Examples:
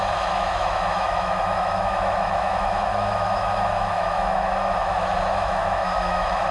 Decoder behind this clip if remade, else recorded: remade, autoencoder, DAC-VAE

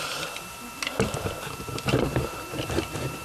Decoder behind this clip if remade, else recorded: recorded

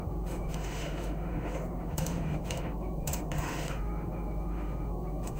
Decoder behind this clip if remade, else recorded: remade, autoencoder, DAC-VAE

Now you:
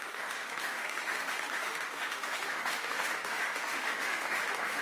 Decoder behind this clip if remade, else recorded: remade, autoencoder, DAC-VAE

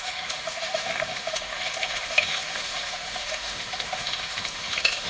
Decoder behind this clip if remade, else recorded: remade, autoencoder, DAC-VAE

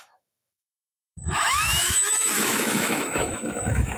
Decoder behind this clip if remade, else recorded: remade, autoencoder, DAC-VAE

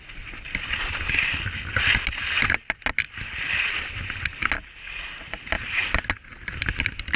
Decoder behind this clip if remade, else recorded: recorded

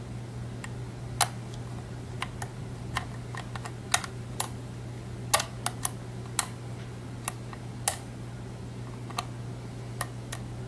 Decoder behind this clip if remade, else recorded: recorded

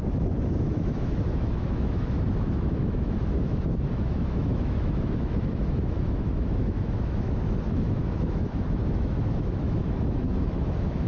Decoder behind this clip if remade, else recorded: remade, autoencoder, DAC-VAE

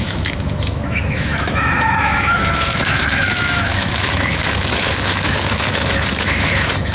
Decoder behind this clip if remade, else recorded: remade, autoencoder, DAC-VAE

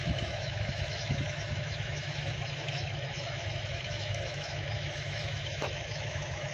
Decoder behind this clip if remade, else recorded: remade, autoencoder, DAC-VAE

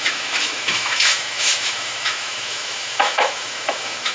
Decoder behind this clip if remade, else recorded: remade, autoencoder, DAC-VAE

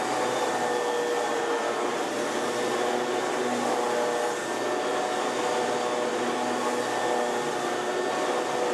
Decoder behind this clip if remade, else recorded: recorded